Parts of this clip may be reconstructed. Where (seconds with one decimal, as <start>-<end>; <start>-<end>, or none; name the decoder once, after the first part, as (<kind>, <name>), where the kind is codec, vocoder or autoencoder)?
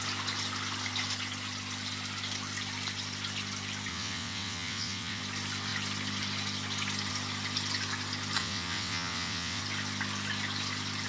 3.9-5.2 (vocoder, WaveNeXt); 8.4-9.6